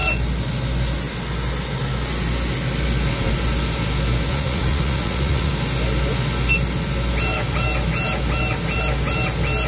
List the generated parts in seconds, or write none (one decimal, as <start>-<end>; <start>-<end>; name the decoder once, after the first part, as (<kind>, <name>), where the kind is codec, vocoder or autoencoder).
4.3-5.5 (vocoder, Vocos)